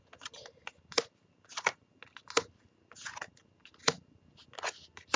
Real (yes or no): yes